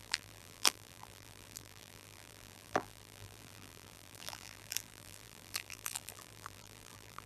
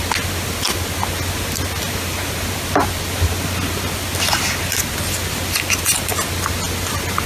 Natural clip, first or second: second